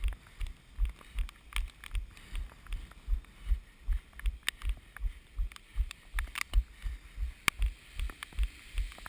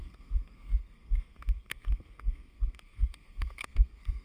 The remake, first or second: second